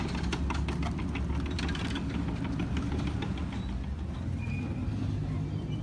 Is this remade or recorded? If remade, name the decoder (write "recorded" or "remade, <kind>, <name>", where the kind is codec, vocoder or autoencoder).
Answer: recorded